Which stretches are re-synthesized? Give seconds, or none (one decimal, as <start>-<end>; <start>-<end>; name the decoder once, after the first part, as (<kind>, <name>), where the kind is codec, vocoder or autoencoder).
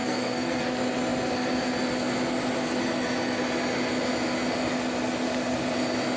0.0-0.6 (codec, SNAC)